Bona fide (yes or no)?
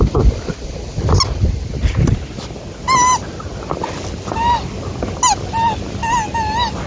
yes